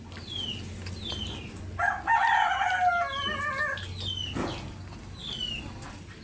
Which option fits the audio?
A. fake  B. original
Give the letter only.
B